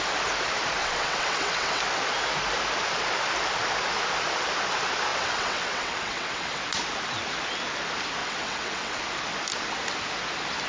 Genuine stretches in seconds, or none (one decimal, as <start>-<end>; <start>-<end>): 0.0-0.8; 1.8-5.1; 6.6-8.2; 9.0-10.7